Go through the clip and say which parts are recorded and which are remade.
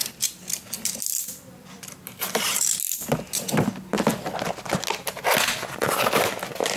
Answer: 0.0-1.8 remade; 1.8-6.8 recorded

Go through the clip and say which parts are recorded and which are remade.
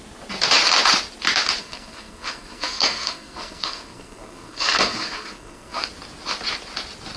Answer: 0.0-1.6 recorded; 1.6-5.9 remade; 5.9-7.2 recorded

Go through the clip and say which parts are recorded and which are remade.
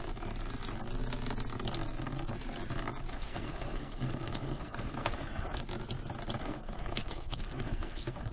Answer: 0.0-3.1 recorded; 3.1-5.6 remade; 5.6-6.4 recorded; 6.4-8.3 remade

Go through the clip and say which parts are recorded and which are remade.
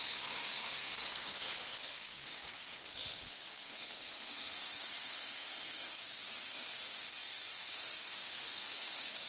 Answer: 0.0-9.3 remade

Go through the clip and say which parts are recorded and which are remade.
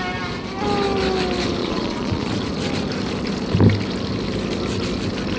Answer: 0.0-1.6 recorded; 1.6-2.3 remade; 2.3-5.4 recorded